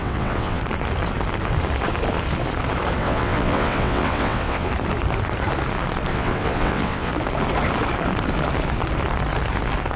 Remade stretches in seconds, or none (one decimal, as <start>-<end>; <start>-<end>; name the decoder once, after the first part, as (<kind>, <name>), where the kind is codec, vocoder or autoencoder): 0.0-0.6 (vocoder, WaveNeXt); 3.0-4.7; 6.1-7.1